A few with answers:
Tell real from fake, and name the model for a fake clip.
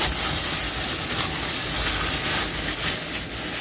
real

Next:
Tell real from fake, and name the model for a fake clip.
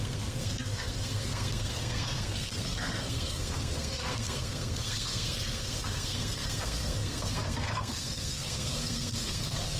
fake, codec, SNAC